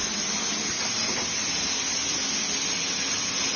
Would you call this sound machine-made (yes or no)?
no